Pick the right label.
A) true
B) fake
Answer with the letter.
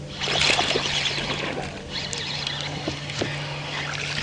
A